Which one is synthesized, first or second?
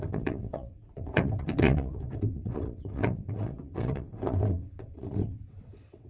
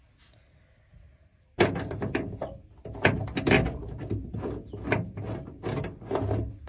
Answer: first